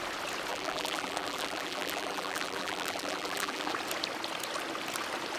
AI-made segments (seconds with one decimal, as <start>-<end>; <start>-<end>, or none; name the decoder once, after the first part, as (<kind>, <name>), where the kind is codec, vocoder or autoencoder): 0.5-3.7 (vocoder, BigVGAN v2)